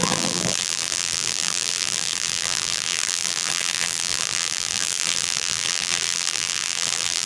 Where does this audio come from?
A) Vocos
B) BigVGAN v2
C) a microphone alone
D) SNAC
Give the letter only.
B